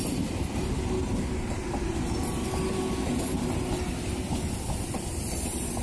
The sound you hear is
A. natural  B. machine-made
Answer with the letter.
A